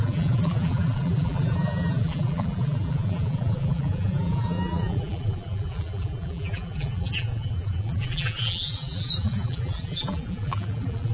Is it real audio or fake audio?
fake